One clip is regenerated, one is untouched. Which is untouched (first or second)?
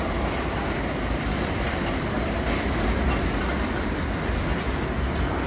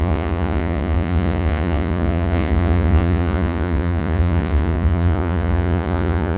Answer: first